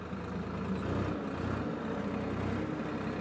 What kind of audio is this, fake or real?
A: real